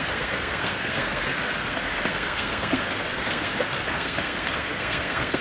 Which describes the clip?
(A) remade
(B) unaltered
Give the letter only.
A